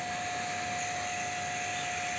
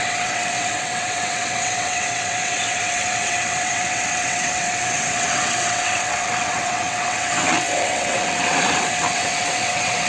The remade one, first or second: second